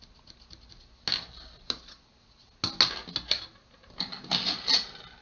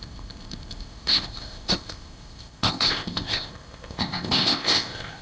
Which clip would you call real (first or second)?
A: first